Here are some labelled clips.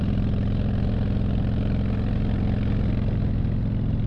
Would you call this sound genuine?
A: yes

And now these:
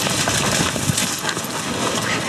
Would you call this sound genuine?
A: yes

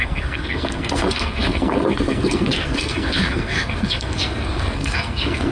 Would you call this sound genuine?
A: no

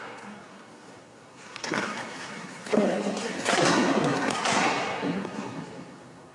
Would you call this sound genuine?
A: no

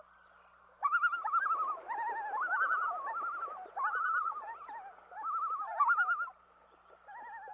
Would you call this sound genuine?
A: yes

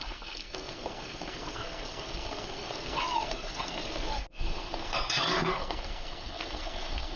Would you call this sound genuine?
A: no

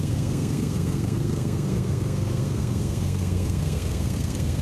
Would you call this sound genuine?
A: no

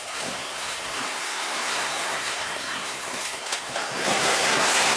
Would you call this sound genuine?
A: no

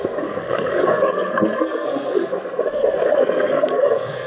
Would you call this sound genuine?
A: no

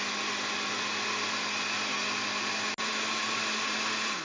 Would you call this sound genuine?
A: yes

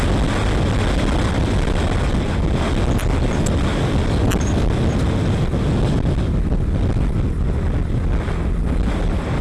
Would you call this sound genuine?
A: yes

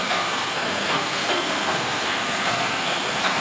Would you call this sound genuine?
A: no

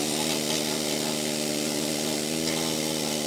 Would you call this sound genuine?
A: yes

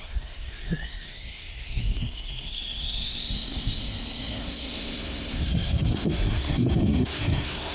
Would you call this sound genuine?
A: no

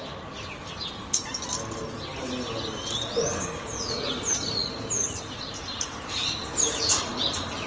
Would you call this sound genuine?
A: yes